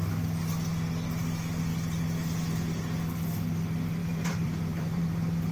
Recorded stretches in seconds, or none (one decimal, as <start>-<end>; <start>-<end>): 0.0-4.0